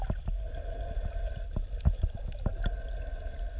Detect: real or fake real